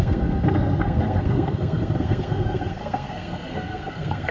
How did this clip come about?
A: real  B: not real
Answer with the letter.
B